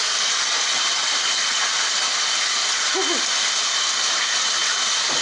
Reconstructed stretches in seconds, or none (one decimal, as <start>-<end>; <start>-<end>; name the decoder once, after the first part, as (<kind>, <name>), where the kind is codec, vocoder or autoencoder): none